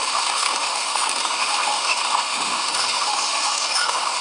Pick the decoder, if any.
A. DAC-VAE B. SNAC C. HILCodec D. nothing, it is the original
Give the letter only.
A